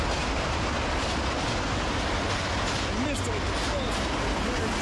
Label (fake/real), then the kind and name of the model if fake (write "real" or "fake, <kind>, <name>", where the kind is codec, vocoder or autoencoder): real